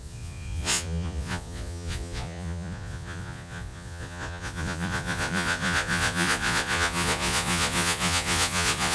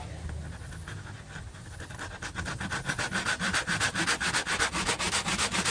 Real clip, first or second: second